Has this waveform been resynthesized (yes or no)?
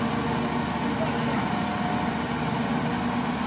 no